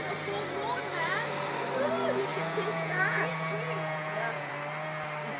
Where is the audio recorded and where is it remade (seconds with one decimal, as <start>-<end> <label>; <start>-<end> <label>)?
0.0-2.3 recorded; 2.3-4.5 remade; 4.5-5.4 recorded